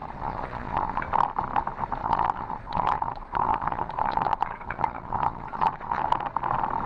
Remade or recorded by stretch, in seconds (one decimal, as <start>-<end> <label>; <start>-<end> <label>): 0.0-1.0 remade; 1.0-2.0 recorded; 2.0-6.0 remade; 6.0-6.9 recorded